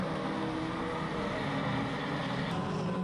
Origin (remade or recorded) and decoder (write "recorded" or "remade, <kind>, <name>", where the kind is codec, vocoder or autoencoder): recorded